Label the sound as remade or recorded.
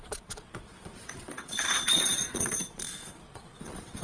remade